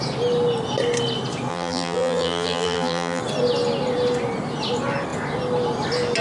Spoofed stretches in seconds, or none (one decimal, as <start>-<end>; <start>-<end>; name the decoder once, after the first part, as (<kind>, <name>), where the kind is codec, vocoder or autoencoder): 1.5-3.2 (vocoder, BigVGAN v2)